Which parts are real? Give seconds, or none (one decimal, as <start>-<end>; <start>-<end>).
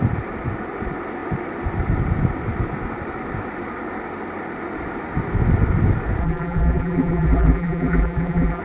0.0-6.2